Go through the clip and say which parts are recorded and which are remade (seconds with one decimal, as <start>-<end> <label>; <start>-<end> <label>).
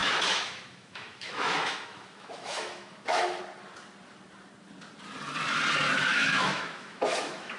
0.0-3.4 remade; 3.4-6.1 recorded; 6.1-7.6 remade